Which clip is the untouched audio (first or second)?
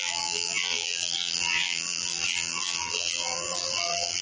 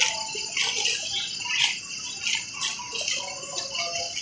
second